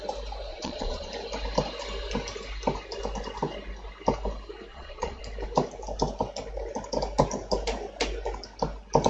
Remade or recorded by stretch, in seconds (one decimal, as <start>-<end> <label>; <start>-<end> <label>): 0.0-0.5 recorded; 0.5-1.1 remade; 1.1-4.7 recorded; 4.7-5.2 remade; 5.2-9.1 recorded